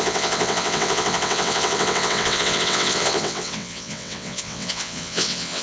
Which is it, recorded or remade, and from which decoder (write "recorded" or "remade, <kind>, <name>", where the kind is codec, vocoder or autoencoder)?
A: remade, vocoder, WaveNeXt